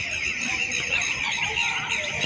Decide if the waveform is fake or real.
real